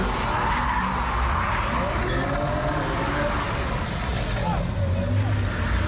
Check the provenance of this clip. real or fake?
real